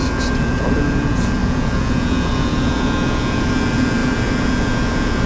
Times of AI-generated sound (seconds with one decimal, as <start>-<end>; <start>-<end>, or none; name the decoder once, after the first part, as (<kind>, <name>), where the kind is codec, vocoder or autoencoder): 0.0-5.3 (vocoder, Vocos)